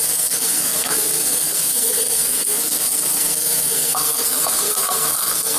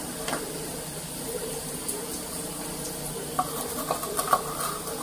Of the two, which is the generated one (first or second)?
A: first